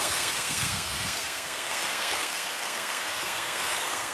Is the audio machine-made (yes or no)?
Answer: yes